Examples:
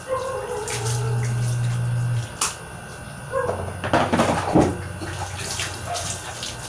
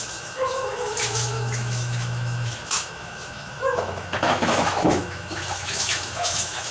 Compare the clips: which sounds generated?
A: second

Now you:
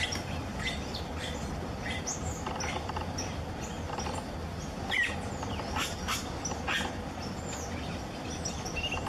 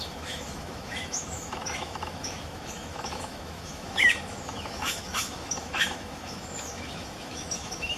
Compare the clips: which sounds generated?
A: second